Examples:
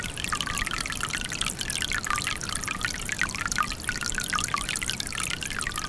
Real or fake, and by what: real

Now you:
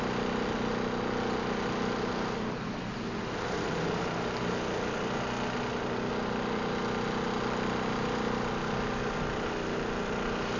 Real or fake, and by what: real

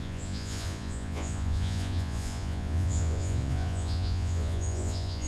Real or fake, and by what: fake, vocoder, Vocos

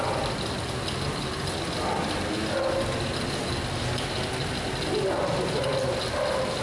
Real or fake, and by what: real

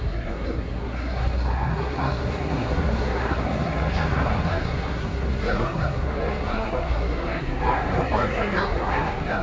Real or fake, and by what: fake, codec, SNAC